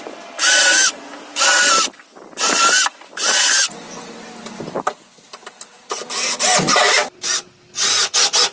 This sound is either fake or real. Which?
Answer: real